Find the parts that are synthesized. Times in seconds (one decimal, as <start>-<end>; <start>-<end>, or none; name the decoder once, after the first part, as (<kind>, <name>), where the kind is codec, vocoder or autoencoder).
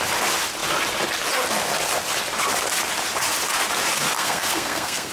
4.2-5.1 (codec, SNAC)